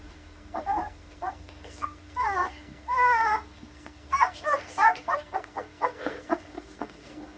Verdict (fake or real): fake